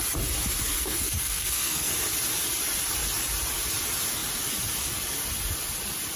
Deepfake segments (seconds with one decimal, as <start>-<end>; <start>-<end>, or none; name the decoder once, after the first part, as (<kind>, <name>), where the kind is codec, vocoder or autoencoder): 0.7-1.9 (codec, SNAC)